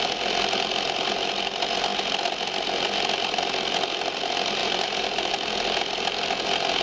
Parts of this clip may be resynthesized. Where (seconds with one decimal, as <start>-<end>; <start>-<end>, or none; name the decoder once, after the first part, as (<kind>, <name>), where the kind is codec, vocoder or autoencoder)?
4.6-5.3 (vocoder, BigVGAN v2)